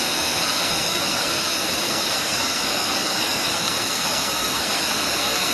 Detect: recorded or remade remade